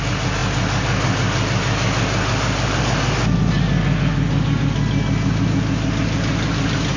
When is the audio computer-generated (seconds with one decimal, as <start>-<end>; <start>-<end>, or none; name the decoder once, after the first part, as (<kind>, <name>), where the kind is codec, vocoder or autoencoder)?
none